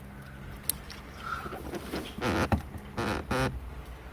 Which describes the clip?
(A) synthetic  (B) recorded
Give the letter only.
B